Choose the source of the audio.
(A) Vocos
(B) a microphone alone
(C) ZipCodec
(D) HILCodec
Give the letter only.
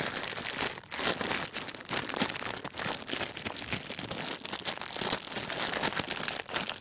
B